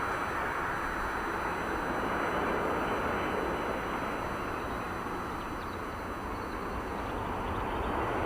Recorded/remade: recorded